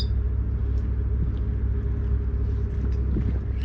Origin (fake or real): real